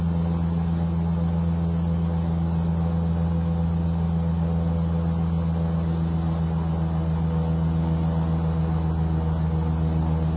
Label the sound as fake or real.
real